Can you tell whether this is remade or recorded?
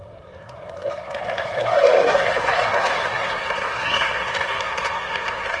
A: remade